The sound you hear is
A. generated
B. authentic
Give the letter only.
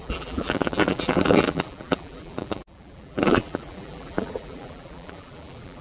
A